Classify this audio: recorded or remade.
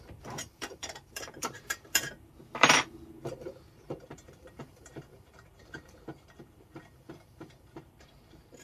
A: remade